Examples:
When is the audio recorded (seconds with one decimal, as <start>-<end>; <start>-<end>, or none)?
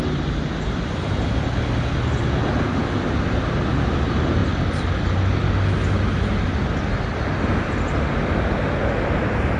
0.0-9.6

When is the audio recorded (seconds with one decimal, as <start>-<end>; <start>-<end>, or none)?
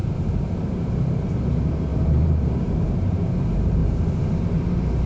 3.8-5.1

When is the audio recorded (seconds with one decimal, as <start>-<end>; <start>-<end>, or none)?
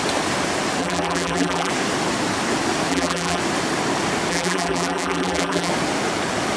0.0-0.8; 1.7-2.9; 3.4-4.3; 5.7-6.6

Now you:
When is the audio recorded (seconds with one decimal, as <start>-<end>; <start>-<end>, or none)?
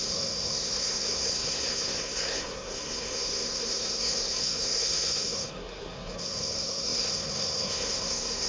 none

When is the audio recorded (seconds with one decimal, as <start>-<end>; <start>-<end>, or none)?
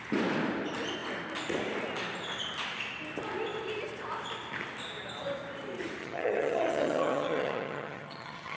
0.0-6.0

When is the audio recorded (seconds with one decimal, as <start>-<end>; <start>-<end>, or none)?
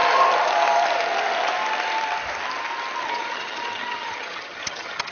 0.0-3.1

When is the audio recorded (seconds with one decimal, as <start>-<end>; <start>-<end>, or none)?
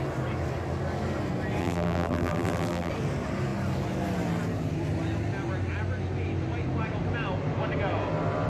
0.0-1.6; 2.9-8.5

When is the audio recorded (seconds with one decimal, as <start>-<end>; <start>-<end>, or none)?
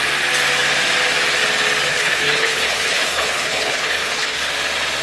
0.0-1.9; 4.5-5.0